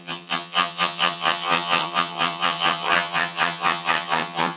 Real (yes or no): no